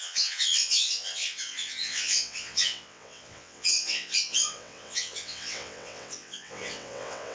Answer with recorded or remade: remade